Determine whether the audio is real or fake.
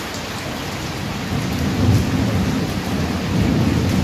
real